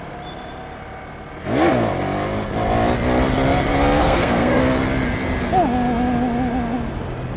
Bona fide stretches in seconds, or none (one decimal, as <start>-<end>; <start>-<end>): 0.0-4.0; 4.6-7.4